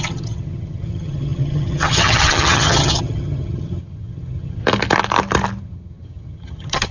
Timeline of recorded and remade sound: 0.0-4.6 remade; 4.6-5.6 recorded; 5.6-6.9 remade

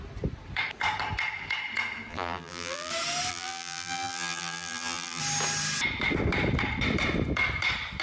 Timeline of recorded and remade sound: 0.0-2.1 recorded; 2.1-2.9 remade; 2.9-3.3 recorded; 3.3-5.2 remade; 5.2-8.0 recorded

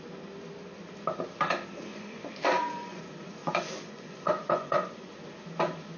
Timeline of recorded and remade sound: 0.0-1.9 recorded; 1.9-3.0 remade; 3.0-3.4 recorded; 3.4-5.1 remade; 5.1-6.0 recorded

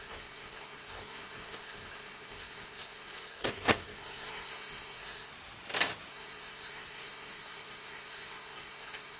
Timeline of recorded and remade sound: 0.0-5.3 remade; 5.3-6.1 recorded; 6.1-9.2 remade

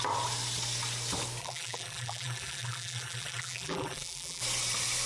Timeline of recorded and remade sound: 0.0-1.4 recorded; 1.4-4.4 remade; 4.4-5.1 recorded